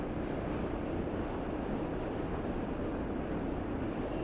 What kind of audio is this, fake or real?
real